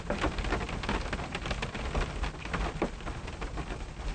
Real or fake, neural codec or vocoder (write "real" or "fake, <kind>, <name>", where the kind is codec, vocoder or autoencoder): real